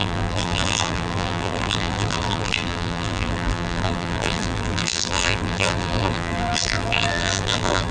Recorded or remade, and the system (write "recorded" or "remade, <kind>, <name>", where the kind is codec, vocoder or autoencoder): remade, vocoder, BigVGAN v2